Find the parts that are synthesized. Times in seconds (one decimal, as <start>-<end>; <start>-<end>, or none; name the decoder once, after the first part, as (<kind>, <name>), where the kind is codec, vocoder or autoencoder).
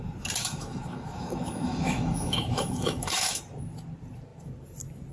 0.4-3.4 (autoencoder, DAC-VAE)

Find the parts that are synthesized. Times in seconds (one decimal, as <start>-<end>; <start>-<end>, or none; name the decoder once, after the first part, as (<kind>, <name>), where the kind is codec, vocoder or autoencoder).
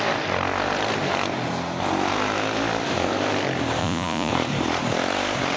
3.8-4.3 (vocoder, Vocos)